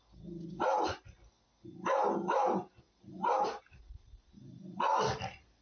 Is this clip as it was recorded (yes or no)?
yes